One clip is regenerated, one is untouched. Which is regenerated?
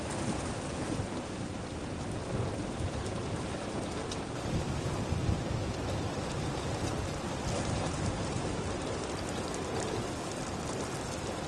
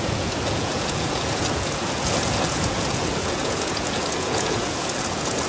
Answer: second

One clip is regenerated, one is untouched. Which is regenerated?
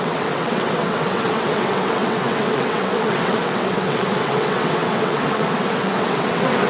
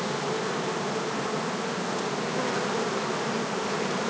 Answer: first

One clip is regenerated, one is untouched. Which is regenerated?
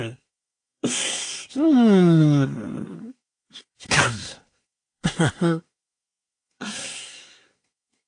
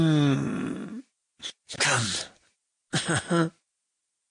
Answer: first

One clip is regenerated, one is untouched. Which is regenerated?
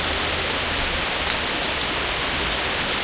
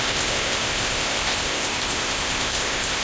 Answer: second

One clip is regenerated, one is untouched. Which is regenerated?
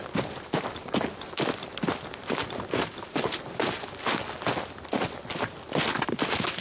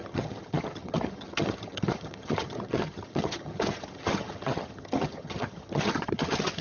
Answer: second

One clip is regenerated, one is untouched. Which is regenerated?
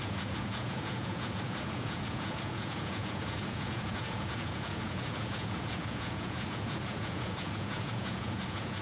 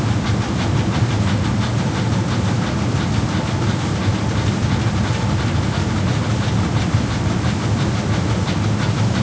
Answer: first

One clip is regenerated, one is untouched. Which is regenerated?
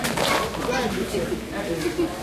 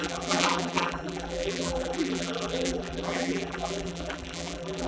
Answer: second